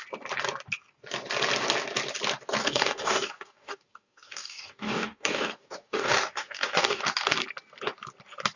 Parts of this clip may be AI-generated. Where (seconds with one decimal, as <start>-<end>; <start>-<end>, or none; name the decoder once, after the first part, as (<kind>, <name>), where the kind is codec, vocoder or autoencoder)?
2.6-7.0 (codec, DAC)